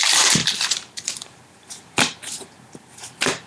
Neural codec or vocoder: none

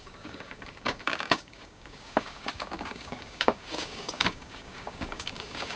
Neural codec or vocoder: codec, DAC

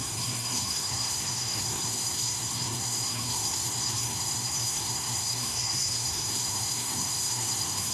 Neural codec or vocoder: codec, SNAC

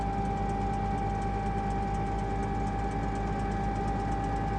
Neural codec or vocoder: none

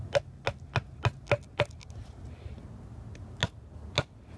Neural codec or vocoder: none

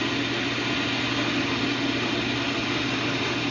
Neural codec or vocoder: none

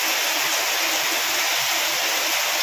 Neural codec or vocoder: none